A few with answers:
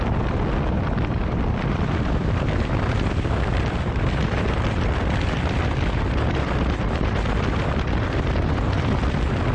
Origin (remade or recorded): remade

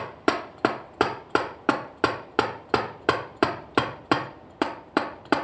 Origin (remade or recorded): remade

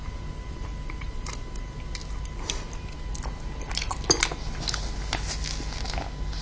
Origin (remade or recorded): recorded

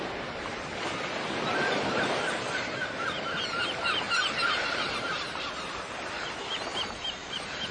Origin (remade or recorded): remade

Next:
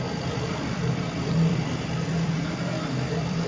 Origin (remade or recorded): remade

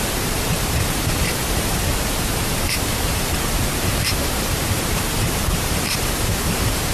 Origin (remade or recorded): remade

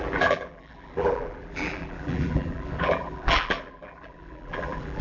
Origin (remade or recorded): remade